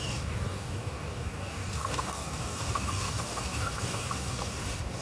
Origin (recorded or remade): remade